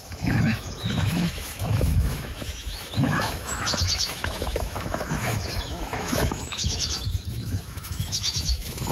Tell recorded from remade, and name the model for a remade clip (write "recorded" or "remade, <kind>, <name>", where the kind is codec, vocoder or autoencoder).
remade, autoencoder, DAC-VAE